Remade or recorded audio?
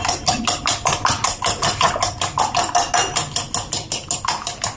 recorded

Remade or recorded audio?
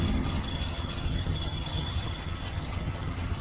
remade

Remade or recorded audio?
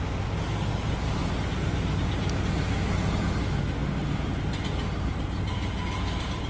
recorded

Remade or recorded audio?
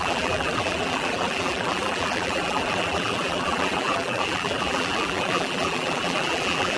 remade